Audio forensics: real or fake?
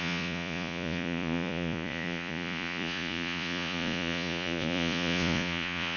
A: fake